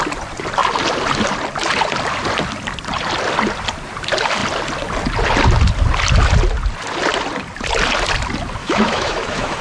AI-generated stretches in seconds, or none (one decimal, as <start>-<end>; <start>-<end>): 8.6-9.6